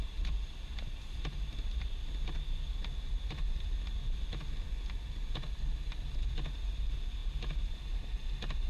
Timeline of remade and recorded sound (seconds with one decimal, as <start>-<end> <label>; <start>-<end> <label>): 0.0-8.7 recorded